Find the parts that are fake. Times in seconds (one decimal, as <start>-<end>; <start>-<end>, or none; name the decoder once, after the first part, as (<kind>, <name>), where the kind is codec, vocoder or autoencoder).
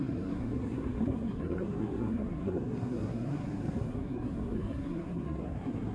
0.0-5.9 (codec, SNAC)